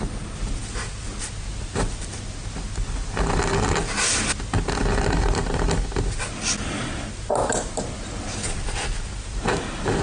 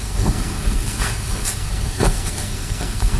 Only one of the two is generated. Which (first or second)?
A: second